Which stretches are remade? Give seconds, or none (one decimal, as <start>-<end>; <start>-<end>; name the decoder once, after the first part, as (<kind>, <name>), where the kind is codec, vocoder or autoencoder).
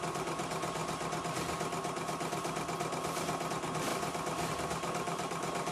0.0-0.8 (vocoder, BigVGAN v2); 3.5-3.9; 4.5-5.7